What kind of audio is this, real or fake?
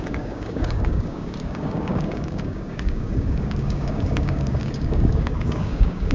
fake